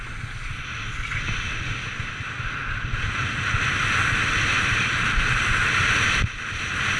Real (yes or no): yes